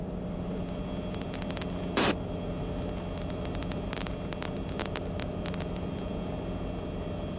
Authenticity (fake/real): real